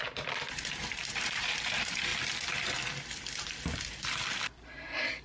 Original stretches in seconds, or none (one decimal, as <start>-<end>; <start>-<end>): 2.1-5.2